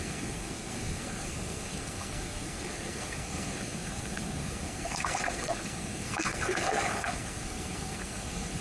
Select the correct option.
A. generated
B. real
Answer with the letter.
A